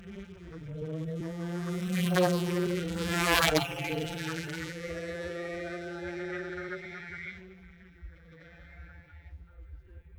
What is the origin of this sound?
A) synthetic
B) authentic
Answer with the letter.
A